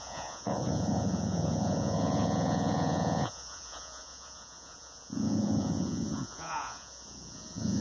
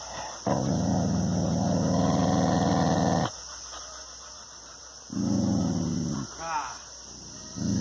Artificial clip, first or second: first